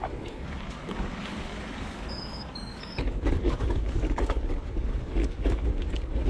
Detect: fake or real fake